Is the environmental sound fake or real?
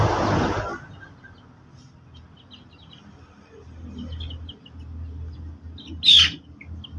real